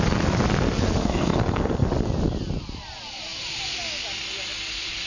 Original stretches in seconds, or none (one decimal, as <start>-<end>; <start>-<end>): 0.0-1.0; 1.9-5.1

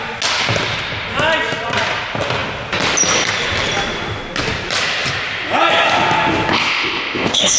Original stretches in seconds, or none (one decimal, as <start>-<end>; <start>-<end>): 0.0-6.5

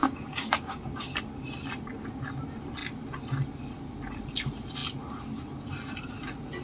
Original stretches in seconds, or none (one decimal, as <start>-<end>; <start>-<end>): 1.2-6.6

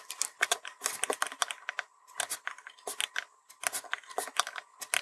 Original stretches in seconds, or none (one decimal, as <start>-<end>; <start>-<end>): 0.0-5.0

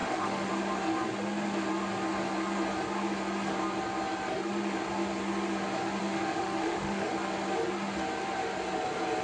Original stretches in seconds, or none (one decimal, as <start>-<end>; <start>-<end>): 0.5-6.0; 7.1-9.2